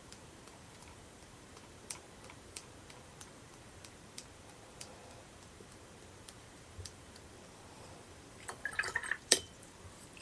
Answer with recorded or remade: remade